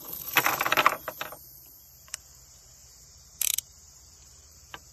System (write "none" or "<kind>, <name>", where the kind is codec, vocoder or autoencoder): vocoder, BigVGAN v2